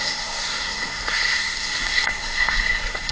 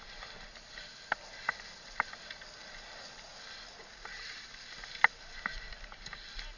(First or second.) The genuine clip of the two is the second